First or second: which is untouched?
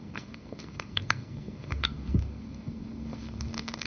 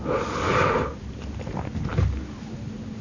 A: second